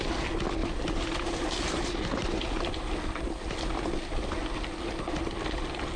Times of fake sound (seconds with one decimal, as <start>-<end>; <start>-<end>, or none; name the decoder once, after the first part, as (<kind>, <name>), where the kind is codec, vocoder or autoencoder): none